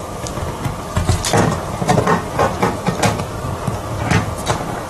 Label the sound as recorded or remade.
recorded